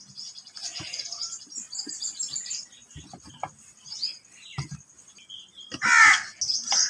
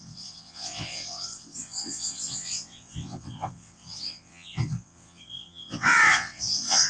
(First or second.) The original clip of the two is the first